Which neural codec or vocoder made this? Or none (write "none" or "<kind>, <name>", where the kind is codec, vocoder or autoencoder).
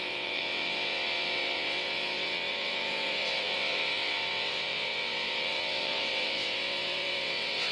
vocoder, WaveNeXt